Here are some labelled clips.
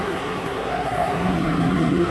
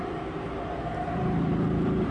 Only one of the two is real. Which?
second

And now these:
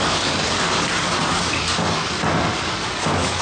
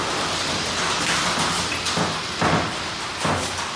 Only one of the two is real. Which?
second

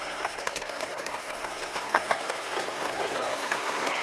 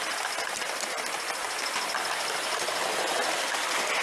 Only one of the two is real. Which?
second